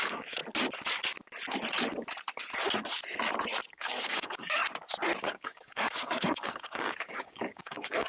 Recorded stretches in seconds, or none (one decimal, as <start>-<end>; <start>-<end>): 0.4-3.7; 4.6-5.2